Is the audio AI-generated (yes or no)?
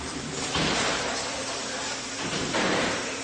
yes